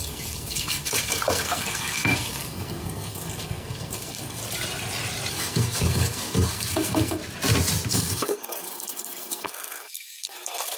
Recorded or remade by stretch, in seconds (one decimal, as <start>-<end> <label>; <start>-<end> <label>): 0.0-4.4 remade; 4.4-5.3 recorded; 5.3-7.2 remade; 7.2-7.9 recorded; 7.9-10.8 remade